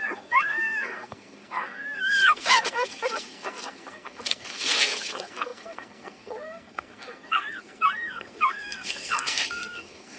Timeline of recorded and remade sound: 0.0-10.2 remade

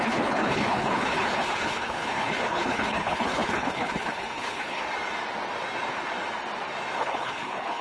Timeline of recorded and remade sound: 0.0-4.8 remade; 4.8-7.0 recorded; 7.0-7.8 remade

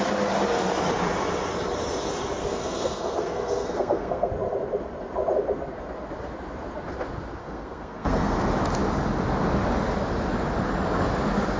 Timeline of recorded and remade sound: 0.0-2.4 recorded; 2.4-4.3 remade; 4.3-7.4 recorded; 7.4-8.4 remade; 8.4-11.6 recorded

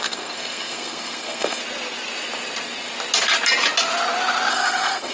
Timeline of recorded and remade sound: 0.0-1.6 remade; 1.6-4.5 recorded; 4.5-5.1 remade